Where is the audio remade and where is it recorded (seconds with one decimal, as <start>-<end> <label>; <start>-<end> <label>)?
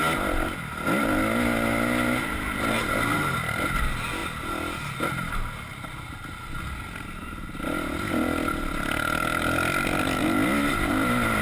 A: 0.0-11.4 recorded